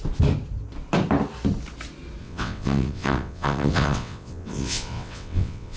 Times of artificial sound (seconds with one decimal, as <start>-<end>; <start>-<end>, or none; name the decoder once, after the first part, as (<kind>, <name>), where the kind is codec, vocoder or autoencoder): 2.2-5.8 (vocoder, WaveNeXt)